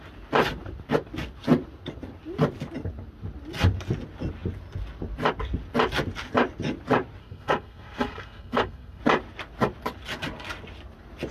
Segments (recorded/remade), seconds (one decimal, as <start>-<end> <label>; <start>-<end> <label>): 0.0-7.2 recorded; 7.2-9.0 remade; 9.0-11.3 recorded